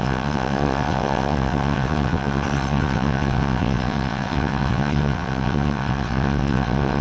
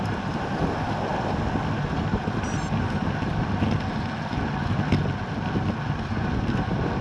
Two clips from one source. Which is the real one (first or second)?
second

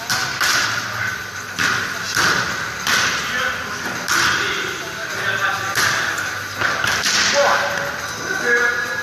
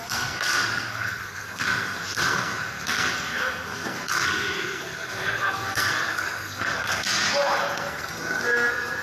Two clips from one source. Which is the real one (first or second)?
first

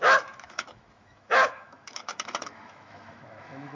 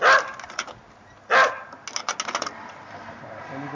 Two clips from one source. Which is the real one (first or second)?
second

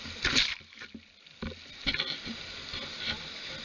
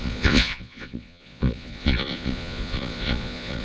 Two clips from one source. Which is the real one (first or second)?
first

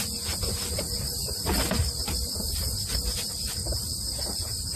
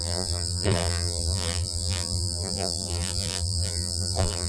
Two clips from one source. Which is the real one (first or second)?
first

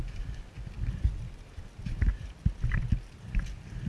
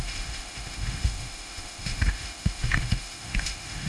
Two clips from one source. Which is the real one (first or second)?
first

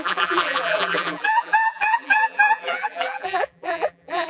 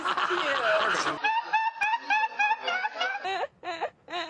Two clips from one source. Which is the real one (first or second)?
second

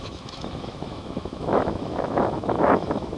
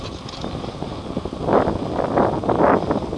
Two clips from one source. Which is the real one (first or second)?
second